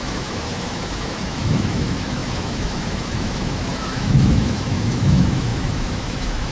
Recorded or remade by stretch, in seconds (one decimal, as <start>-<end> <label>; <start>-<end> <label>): 0.0-6.5 remade